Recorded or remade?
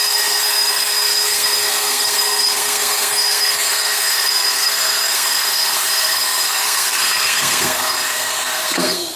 remade